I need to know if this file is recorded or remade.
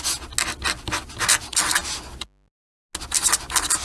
recorded